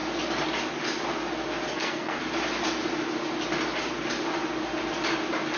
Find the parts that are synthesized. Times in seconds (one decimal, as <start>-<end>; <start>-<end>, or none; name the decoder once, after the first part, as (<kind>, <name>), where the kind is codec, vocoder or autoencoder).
1.7-2.2 (codec, SNAC)